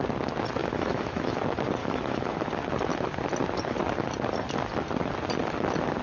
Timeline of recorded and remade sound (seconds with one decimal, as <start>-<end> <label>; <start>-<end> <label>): 0.0-0.6 recorded; 0.6-1.4 remade; 1.4-1.8 recorded; 1.8-2.3 remade; 2.3-6.0 recorded